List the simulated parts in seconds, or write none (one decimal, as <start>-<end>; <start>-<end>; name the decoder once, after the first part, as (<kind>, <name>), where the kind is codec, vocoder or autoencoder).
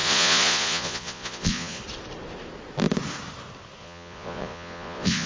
0.0-1.8 (vocoder, Vocos); 3.8-5.3